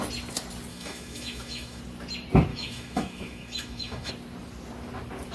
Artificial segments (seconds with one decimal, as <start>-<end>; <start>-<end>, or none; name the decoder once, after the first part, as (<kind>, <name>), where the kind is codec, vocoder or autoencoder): 0.7-1.8 (autoencoder, DAC-VAE); 2.5-4.1